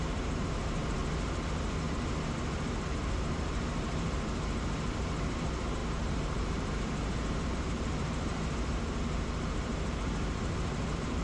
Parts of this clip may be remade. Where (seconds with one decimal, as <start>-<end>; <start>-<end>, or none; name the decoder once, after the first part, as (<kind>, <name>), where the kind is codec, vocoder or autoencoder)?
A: 0.0-1.0 (vocoder, BigVGAN v2); 2.8-11.2